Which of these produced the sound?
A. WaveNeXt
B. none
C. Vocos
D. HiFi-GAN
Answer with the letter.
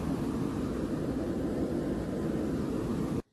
B